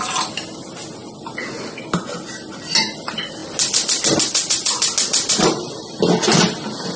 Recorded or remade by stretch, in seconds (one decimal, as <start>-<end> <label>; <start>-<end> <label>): 0.0-7.0 recorded